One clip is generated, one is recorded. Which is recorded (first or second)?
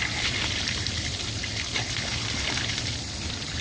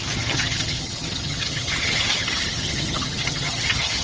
first